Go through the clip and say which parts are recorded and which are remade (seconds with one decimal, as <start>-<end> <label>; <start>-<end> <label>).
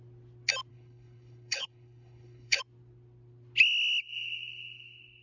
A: 0.0-0.7 recorded; 0.7-2.6 remade; 2.6-5.2 recorded